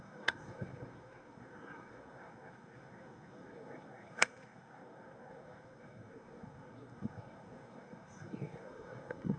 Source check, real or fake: fake